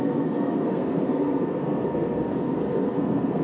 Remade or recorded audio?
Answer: remade